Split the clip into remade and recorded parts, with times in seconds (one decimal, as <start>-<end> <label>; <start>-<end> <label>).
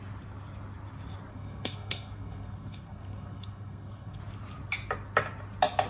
0.0-1.3 recorded; 1.3-4.2 remade; 4.2-5.9 recorded